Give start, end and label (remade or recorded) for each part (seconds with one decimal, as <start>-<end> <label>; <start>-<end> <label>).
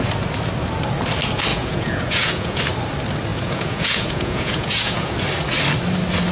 0.0-1.5 recorded; 1.5-2.6 remade; 2.6-3.3 recorded; 3.3-5.1 remade; 5.1-6.3 recorded